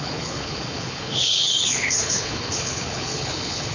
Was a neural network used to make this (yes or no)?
yes